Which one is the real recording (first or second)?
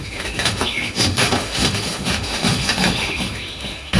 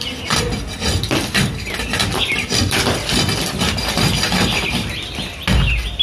second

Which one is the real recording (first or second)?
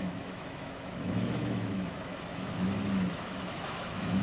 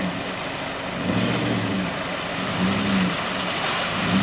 second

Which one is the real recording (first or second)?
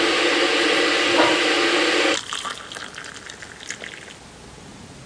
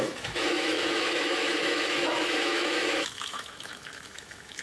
first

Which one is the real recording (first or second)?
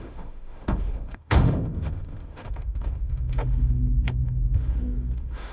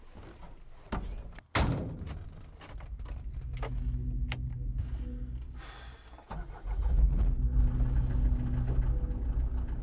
second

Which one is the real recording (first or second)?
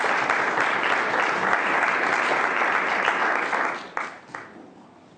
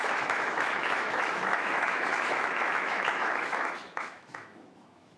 first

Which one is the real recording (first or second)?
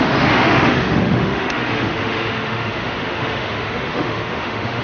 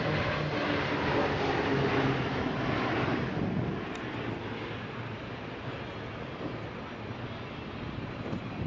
second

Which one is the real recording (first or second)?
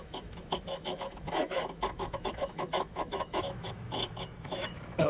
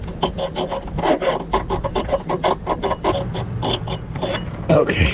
second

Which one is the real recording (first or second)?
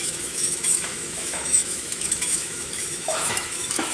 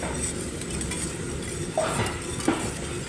second